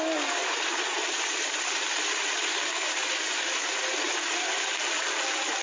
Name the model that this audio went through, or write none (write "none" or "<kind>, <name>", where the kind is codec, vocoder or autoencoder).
none